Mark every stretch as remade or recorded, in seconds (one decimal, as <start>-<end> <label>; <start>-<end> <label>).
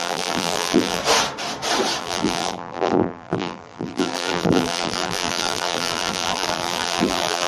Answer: 0.0-1.0 remade; 1.0-2.0 recorded; 2.0-7.5 remade